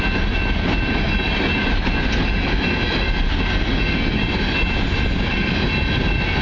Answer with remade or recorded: recorded